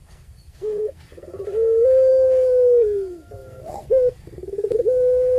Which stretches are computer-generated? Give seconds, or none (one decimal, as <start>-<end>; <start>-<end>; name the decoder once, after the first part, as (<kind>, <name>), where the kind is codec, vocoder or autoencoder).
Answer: 0.0-1.4 (codec, SNAC); 2.1-5.4